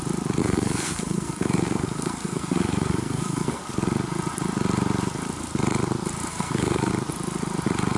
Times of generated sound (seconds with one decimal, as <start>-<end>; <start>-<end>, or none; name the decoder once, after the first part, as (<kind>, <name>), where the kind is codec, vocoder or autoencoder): 0.4-3.6 (codec, SNAC); 6.3-6.9